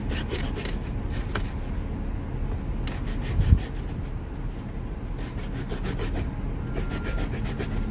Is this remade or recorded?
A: recorded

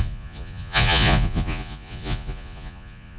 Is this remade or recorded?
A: remade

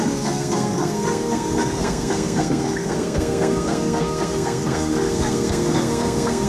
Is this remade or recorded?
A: remade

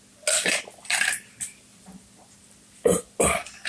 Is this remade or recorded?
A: recorded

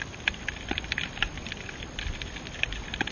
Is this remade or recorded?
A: recorded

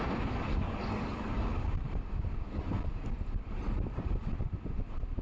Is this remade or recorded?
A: recorded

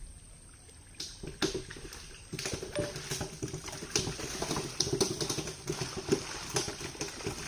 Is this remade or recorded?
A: recorded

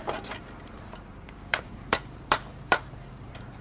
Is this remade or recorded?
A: remade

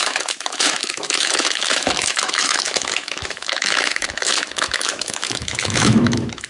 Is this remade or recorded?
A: remade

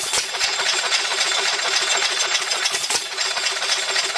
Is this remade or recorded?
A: remade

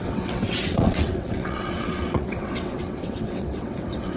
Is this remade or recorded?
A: remade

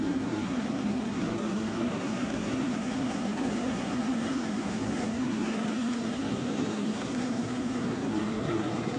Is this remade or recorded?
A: remade